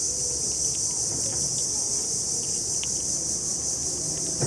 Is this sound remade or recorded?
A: recorded